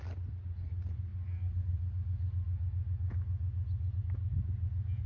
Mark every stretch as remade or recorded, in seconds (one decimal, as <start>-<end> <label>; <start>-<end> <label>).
0.0-5.1 recorded